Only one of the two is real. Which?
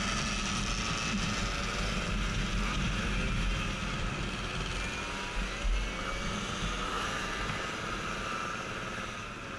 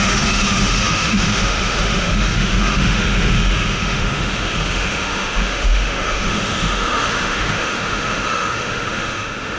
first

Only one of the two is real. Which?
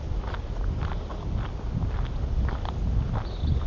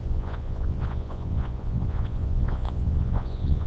first